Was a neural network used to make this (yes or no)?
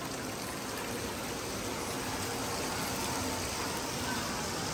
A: no